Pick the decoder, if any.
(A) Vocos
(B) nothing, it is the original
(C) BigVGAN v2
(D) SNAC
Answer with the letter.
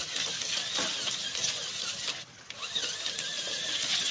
B